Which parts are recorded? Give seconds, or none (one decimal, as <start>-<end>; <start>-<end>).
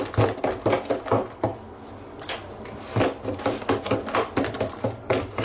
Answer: 0.0-5.4